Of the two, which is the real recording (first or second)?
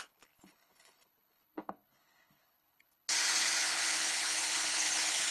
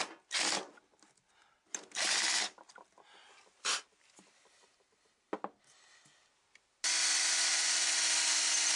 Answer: second